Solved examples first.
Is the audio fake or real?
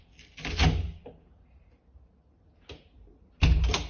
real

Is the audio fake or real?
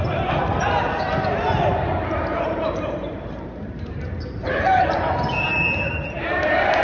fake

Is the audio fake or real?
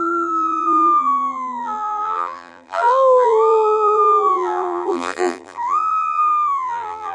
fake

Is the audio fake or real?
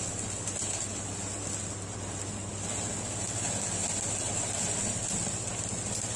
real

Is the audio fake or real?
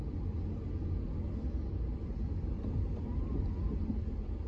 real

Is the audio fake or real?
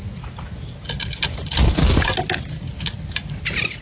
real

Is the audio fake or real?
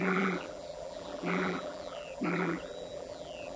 fake